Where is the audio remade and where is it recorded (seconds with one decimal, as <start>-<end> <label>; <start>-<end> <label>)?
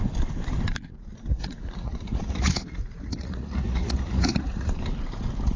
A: 0.0-1.3 recorded; 1.3-4.7 remade; 4.7-5.6 recorded